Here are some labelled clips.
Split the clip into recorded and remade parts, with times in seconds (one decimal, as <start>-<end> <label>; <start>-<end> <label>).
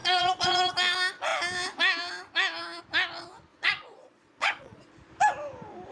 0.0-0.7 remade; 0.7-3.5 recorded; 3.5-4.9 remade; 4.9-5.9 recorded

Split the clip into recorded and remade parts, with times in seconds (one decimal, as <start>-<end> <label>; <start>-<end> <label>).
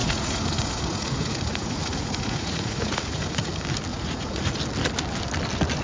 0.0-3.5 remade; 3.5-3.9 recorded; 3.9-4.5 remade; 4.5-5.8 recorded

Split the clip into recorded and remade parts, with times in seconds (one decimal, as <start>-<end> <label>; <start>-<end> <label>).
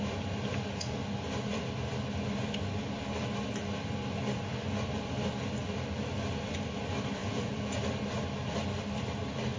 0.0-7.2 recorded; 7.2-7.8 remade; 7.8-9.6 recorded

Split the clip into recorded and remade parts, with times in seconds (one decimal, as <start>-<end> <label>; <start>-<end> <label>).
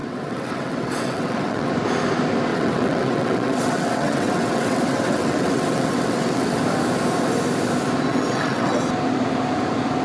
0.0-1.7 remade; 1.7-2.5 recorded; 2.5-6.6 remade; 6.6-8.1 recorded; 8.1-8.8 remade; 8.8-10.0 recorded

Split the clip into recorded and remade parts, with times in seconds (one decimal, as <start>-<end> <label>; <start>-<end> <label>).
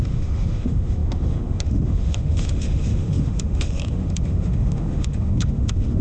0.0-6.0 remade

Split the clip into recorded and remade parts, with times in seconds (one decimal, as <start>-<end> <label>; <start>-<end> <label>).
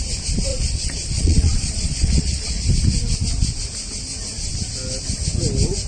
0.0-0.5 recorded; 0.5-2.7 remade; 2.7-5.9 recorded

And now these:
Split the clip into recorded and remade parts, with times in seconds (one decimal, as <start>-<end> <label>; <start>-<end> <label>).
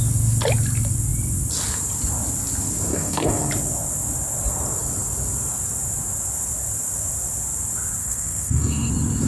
0.0-2.9 recorded; 2.9-3.5 remade; 3.5-8.0 recorded; 8.0-8.9 remade; 8.9-9.3 recorded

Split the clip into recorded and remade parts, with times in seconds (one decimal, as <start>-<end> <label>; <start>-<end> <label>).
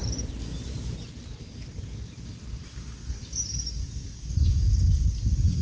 0.0-5.6 recorded